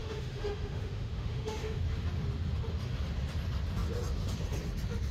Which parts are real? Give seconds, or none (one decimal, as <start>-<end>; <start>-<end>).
1.8-5.1